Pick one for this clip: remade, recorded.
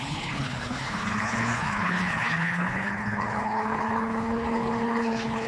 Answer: remade